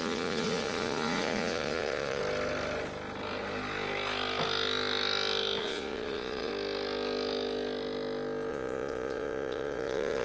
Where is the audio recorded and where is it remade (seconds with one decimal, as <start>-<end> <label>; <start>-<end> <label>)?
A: 0.0-2.2 remade; 2.2-5.6 recorded; 5.6-6.5 remade; 6.5-8.5 recorded; 8.5-10.2 remade